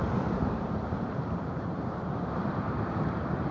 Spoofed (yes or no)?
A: yes